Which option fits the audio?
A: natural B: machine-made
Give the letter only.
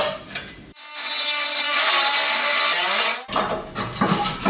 A